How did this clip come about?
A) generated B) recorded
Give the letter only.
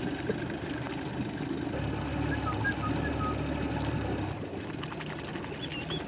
B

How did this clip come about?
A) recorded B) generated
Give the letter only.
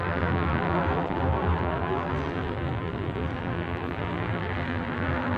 B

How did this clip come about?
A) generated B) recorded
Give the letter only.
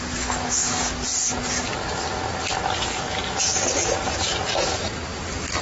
B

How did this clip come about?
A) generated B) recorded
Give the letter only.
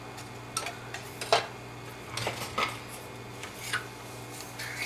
B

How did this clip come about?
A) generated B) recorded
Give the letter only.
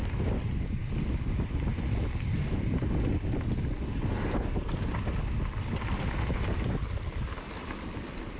B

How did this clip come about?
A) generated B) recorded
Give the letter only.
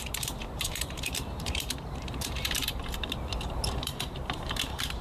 A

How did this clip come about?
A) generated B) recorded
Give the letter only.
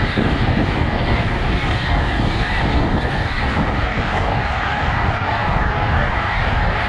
A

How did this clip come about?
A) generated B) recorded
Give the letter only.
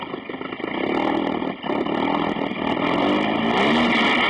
B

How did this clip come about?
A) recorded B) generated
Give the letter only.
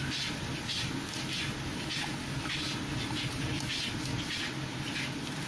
A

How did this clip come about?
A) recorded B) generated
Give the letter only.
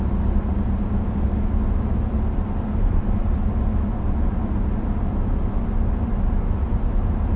A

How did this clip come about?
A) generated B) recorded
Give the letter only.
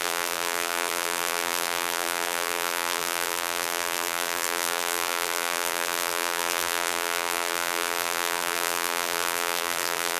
A